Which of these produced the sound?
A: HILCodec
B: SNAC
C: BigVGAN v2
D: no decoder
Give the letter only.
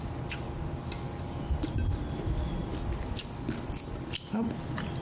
D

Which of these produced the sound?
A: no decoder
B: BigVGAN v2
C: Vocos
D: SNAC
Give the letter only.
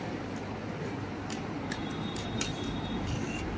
A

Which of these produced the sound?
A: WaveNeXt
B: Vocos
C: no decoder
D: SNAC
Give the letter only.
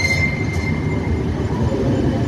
C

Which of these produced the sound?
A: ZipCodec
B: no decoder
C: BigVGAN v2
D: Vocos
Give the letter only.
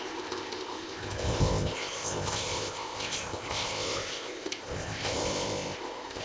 A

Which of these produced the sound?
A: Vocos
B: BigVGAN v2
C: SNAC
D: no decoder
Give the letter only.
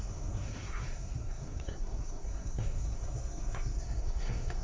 C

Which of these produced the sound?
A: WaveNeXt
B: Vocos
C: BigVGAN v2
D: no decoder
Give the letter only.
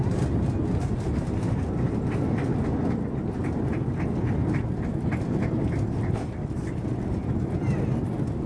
D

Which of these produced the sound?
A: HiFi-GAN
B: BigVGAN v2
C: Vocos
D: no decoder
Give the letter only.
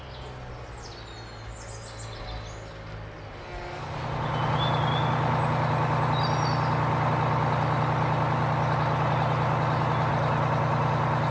D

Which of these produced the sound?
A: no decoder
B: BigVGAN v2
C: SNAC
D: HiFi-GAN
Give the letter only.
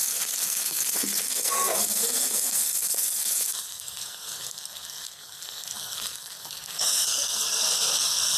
C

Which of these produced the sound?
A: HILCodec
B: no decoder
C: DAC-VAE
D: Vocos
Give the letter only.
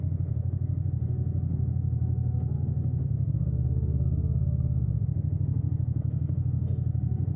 C